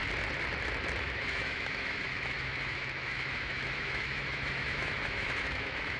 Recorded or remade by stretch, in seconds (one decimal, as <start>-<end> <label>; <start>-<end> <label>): 0.0-1.0 recorded; 1.0-6.0 remade